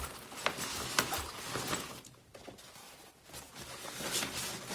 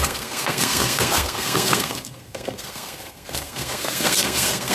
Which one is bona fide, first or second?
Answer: first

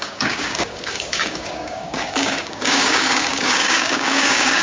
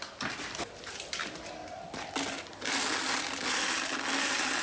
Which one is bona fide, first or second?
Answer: second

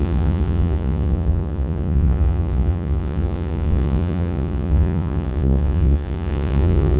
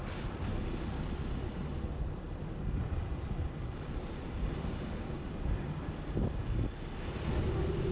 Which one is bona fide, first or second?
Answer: second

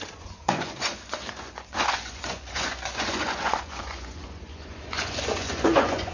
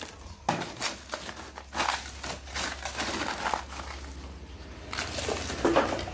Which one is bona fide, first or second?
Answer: second